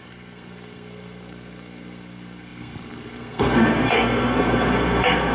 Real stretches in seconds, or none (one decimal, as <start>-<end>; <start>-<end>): none

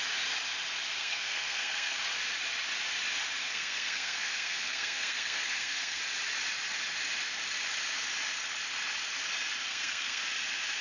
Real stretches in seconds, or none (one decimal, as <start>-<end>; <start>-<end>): 0.0-1.0; 2.0-3.4; 6.0-9.7; 10.2-10.8

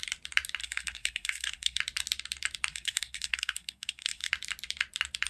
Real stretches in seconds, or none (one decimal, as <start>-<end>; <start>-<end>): 0.0-0.6; 1.8-2.7; 4.3-5.3

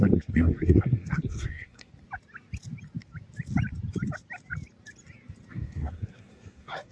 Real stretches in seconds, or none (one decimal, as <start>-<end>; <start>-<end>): 1.9-5.5

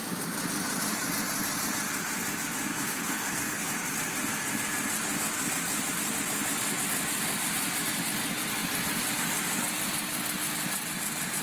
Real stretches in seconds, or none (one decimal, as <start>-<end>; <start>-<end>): 0.0-2.7; 3.7-11.4

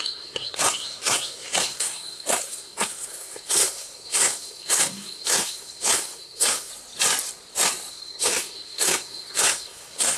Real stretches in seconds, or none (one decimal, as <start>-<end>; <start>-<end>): 6.7-7.9

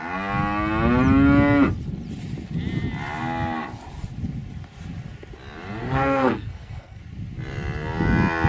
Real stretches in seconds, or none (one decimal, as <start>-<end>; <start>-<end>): 0.0-5.8; 7.0-8.5

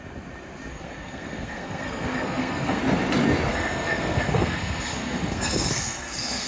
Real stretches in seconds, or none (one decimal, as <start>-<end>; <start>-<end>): 0.0-0.7; 2.8-3.5